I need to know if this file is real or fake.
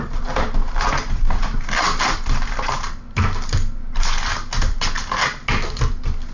real